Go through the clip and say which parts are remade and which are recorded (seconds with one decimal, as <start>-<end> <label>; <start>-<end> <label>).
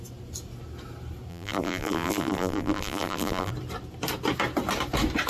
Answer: 0.0-1.3 recorded; 1.3-3.5 remade; 3.5-5.3 recorded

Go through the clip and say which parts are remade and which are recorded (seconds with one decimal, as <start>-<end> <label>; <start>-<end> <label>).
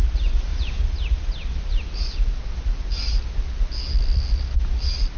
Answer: 0.0-5.2 recorded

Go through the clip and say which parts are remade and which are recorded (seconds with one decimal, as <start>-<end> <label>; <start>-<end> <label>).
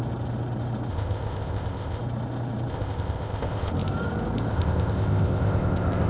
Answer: 0.0-0.9 recorded; 0.9-2.0 remade; 2.0-2.7 recorded; 2.7-3.7 remade; 3.7-4.5 recorded; 4.5-6.1 remade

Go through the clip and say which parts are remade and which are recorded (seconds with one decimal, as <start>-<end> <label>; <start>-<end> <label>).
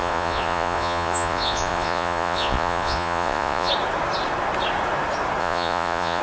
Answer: 0.0-3.7 remade; 3.7-5.4 recorded; 5.4-6.2 remade